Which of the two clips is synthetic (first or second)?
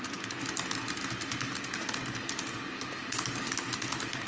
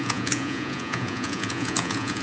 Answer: second